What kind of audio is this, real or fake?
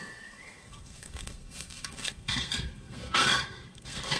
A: fake